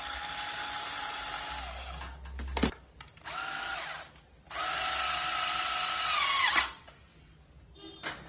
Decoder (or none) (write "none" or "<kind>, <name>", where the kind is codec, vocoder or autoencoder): none